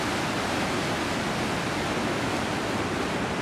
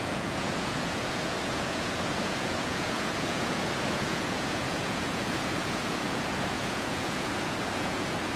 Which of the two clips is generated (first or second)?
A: second